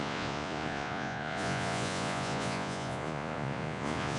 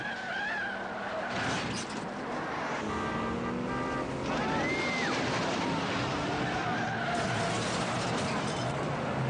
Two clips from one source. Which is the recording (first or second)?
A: second